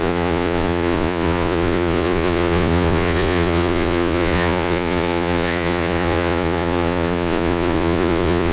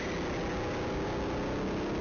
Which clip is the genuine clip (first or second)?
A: second